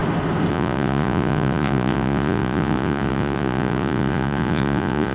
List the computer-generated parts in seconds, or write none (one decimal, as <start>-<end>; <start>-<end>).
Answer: 0.5-5.1